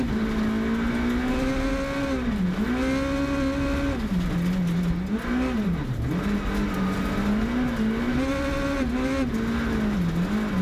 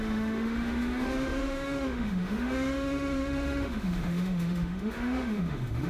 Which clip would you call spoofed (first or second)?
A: second